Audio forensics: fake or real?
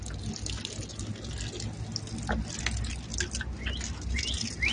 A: real